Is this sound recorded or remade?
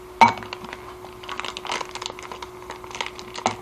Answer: recorded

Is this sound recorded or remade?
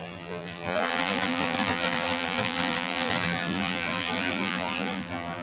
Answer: remade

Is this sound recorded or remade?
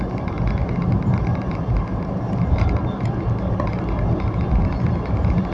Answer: recorded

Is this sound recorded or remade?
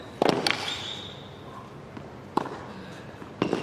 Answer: recorded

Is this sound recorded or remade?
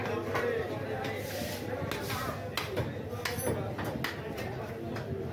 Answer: recorded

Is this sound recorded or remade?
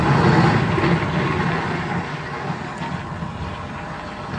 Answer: recorded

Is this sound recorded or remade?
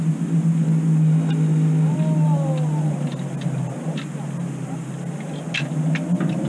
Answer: recorded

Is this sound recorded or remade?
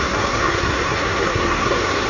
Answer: remade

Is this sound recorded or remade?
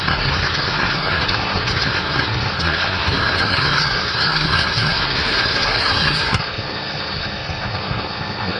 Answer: remade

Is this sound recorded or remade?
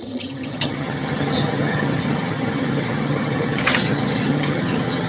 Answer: remade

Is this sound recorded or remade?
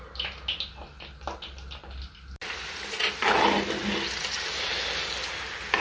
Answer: recorded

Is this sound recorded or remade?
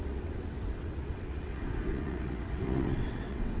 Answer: remade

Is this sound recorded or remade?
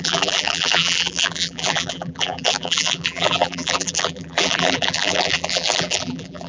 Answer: remade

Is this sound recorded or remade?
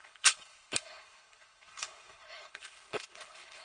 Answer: remade